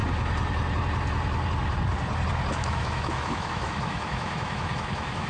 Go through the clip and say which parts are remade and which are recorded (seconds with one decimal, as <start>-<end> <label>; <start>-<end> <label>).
0.0-2.5 recorded; 2.5-5.3 remade